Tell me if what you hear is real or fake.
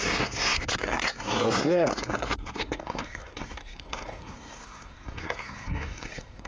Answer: fake